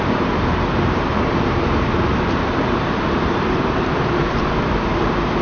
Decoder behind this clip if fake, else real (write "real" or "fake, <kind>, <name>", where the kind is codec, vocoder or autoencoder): fake, vocoder, BigVGAN v2